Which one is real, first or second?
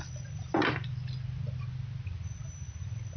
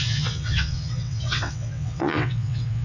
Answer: first